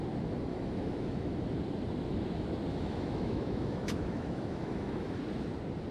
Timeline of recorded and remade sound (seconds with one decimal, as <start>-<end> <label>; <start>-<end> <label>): 0.0-0.5 recorded; 0.5-1.3 remade; 1.3-2.7 recorded; 2.7-5.2 remade; 5.2-5.9 recorded